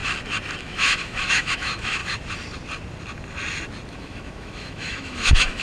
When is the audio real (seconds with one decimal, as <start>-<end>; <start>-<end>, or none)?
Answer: 0.0-0.6; 2.0-3.9